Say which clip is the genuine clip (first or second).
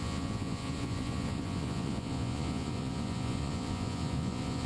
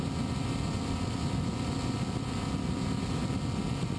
second